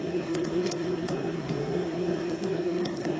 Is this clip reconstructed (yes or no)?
yes